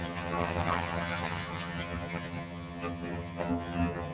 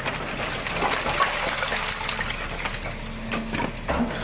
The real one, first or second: second